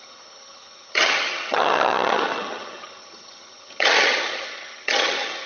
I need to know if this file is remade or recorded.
remade